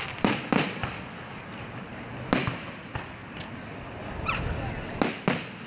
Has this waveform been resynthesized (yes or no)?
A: no